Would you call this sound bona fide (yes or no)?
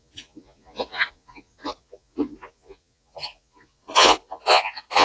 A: no